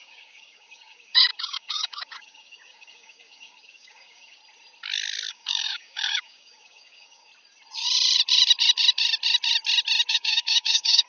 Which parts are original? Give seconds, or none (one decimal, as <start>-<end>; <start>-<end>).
4.4-5.3; 7.3-10.1